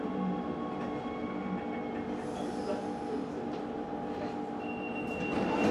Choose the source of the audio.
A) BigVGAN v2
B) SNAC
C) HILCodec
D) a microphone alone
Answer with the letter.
D